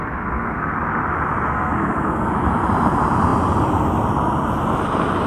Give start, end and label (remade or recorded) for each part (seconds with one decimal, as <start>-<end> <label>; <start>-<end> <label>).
0.0-0.7 remade; 0.7-1.5 recorded; 1.5-2.3 remade; 2.3-5.3 recorded

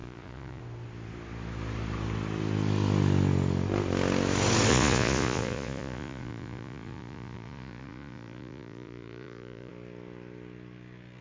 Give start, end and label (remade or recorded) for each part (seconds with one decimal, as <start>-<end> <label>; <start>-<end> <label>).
0.0-0.6 remade; 0.6-4.7 recorded; 4.7-9.7 remade; 9.7-11.2 recorded